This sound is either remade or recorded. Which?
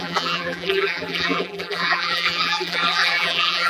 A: remade